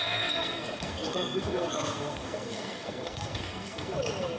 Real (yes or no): no